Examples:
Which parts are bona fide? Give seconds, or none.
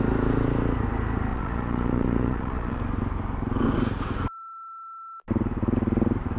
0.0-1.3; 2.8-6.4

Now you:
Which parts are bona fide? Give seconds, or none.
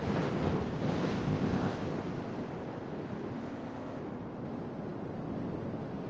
0.0-1.1; 1.8-3.4; 4.0-6.1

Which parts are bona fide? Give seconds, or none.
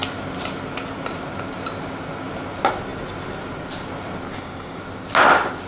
0.0-4.3; 4.8-5.7